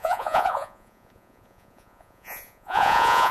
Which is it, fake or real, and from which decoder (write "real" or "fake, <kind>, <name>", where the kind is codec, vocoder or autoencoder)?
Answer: fake, vocoder, Vocos